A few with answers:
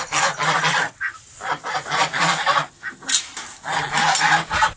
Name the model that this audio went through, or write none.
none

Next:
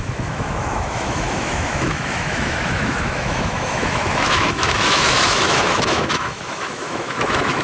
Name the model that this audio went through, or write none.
autoencoder, DAC-VAE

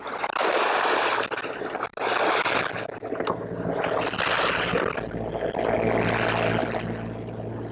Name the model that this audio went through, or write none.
none